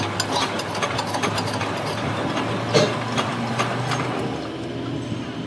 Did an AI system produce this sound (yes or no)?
no